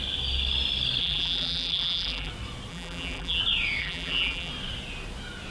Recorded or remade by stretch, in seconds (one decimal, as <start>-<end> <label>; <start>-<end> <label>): 0.0-1.0 recorded; 1.0-2.3 remade; 2.3-2.7 recorded; 2.7-3.4 remade; 3.4-3.8 recorded; 3.8-4.5 remade; 4.5-5.5 recorded